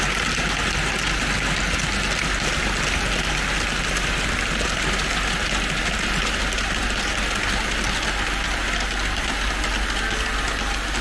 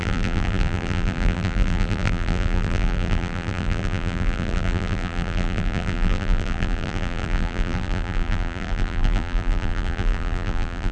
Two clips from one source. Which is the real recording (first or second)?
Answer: first